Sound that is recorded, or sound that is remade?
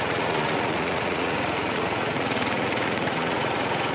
remade